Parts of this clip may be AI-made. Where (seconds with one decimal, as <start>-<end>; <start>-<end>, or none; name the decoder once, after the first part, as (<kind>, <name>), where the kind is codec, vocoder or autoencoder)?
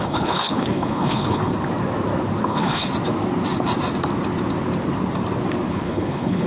0.0-1.5 (codec, HILCodec); 2.5-2.9; 5.7-6.5